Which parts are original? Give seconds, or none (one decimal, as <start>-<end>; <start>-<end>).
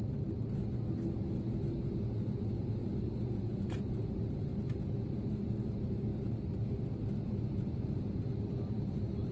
0.0-9.3